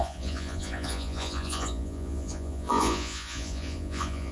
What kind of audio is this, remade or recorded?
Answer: remade